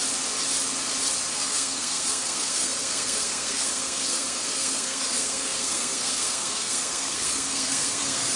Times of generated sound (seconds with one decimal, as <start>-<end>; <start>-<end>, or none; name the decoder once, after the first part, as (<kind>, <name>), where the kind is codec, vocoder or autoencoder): 1.3-8.4 (codec, SNAC)

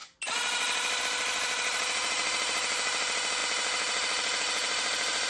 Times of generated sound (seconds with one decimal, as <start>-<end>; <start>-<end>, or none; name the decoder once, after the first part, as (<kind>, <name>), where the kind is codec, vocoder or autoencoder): none

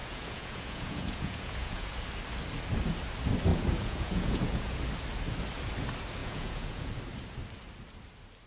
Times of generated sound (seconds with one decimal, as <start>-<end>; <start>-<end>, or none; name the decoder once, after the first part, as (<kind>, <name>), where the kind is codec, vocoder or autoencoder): 0.0-1.9 (vocoder, Vocos); 3.5-4.8; 6.2-6.9

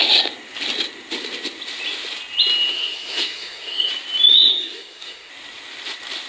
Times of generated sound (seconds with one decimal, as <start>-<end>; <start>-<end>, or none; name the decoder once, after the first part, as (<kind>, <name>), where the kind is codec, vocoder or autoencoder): 2.7-3.9 (codec, SNAC); 4.5-5.3